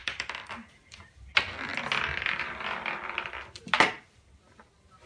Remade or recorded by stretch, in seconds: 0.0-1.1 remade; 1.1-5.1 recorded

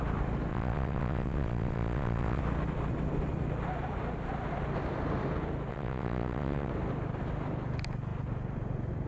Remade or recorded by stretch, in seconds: 0.0-0.5 recorded; 0.5-2.4 remade; 2.4-5.7 recorded; 5.7-6.7 remade; 6.7-9.1 recorded